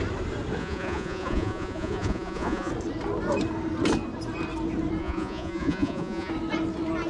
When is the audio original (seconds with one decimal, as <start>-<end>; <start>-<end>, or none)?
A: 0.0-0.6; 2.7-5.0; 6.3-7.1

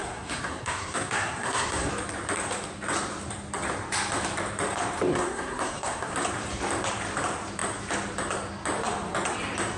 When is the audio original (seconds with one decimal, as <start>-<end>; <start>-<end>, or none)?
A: 1.9-5.1; 6.1-9.8

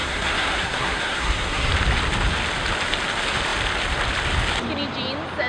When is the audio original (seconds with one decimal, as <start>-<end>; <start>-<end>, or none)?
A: 1.7-5.5

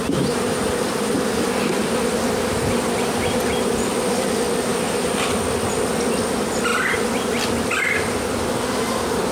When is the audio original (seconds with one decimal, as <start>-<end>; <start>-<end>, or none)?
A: 0.0-9.3

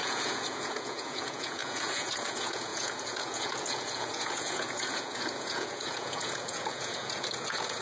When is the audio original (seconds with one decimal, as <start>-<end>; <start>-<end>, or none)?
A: none

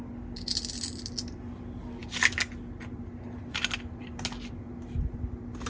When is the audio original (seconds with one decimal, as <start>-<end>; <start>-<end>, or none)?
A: 0.0-5.7

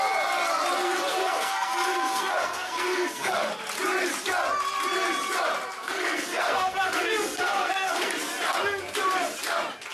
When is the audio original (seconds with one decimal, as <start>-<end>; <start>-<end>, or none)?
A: 0.0-0.8; 3.5-5.8; 8.1-9.9

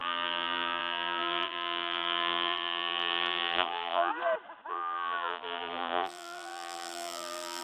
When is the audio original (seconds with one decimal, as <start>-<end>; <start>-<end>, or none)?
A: 4.1-4.7